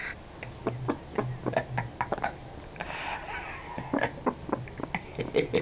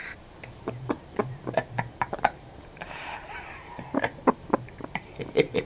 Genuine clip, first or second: first